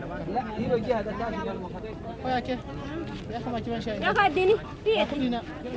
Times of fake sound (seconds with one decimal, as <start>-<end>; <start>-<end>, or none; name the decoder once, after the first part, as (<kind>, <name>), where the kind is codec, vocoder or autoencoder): 1.5-2.6 (vocoder, BigVGAN v2)